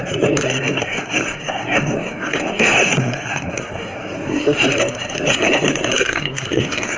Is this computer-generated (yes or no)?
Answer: yes